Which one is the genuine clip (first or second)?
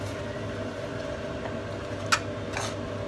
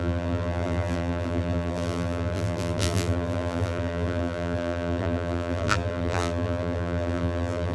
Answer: first